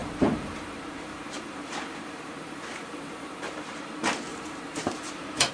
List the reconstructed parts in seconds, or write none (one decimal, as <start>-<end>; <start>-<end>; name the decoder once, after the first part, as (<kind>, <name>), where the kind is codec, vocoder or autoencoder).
0.0-3.3 (vocoder, BigVGAN v2); 4.3-5.5